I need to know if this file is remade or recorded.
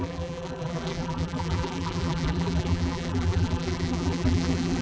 remade